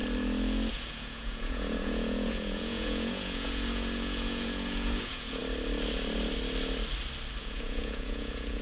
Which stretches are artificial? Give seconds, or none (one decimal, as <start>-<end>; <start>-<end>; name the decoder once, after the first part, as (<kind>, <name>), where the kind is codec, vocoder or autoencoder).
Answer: 0.7-5.4 (vocoder, Vocos); 7.4-8.6

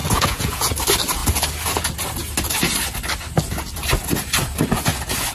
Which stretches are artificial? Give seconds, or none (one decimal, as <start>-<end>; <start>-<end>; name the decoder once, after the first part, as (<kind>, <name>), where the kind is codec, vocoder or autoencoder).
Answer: 0.0-0.7 (vocoder, Vocos)